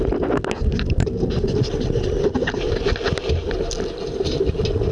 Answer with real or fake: real